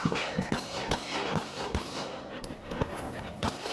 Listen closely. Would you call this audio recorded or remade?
remade